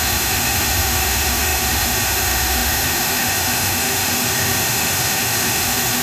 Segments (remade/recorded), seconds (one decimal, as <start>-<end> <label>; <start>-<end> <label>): 0.0-6.0 remade